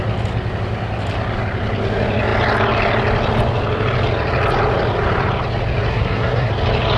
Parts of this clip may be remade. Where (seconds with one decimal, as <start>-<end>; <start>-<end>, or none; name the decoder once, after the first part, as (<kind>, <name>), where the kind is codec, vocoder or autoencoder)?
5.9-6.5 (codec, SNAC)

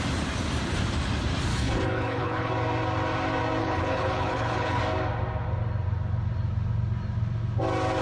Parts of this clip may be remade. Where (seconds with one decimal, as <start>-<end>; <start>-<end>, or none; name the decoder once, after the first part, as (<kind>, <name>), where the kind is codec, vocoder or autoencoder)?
1.5-2.5 (codec, HILCodec); 3.6-4.8

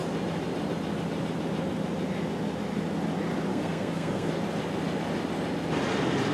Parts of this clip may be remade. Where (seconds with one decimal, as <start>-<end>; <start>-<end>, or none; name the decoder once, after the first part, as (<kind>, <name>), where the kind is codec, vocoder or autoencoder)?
3.5-4.3 (codec, SNAC)